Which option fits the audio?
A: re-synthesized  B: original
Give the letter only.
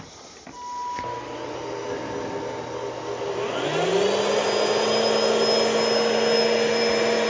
B